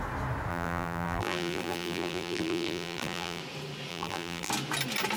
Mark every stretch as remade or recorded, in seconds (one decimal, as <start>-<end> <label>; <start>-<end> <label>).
0.0-0.5 recorded; 0.5-3.4 remade; 3.4-3.9 recorded; 3.9-4.5 remade; 4.5-5.2 recorded